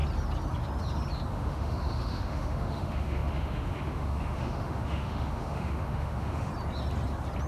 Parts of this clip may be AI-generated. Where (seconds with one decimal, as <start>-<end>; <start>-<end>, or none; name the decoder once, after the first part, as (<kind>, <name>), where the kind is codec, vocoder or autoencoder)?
1.3-6.5 (autoencoder, DAC-VAE)